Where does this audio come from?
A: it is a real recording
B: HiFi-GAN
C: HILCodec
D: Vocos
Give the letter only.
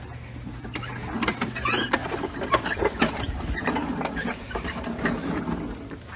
A